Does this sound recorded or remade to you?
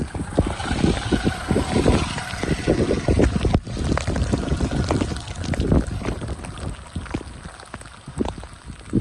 recorded